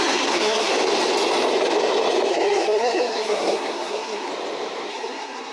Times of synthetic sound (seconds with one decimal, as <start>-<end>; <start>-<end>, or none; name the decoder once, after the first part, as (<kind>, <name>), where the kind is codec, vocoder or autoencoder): 0.0-0.7 (codec, SNAC); 2.3-4.3; 4.9-5.5